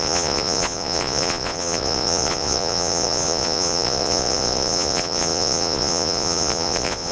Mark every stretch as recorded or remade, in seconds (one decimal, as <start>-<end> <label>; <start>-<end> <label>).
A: 0.0-7.1 remade